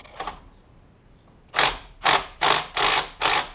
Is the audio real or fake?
real